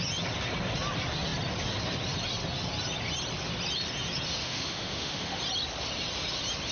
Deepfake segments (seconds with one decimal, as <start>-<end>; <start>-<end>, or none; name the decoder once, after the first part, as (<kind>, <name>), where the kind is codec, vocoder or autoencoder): 4.4-5.4 (autoencoder, DAC-VAE)